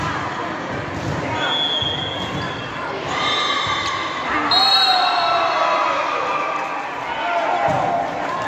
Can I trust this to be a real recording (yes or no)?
yes